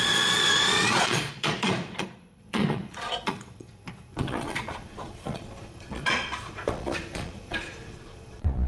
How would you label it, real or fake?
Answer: fake